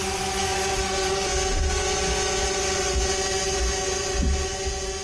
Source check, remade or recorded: recorded